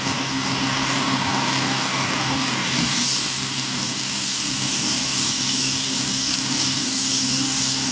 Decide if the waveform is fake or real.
fake